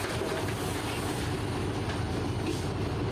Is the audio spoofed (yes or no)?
no